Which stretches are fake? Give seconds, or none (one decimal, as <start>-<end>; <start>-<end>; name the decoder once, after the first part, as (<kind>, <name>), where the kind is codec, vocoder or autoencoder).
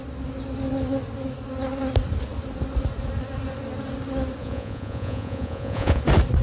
4.4-6.0 (vocoder, Vocos)